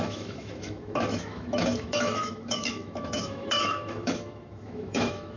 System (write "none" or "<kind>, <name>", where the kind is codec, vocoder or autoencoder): autoencoder, DAC-VAE